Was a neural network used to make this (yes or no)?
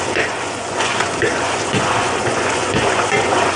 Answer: yes